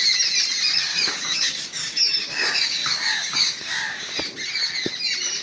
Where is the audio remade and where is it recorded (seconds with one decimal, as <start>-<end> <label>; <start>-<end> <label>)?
0.0-0.9 recorded; 0.9-4.1 remade; 4.1-5.4 recorded